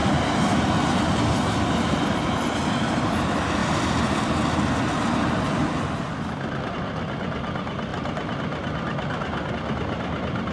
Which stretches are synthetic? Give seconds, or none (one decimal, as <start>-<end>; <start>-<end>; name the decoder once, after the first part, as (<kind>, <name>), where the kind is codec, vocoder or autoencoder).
none